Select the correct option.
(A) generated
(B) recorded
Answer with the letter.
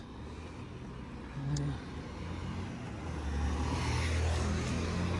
B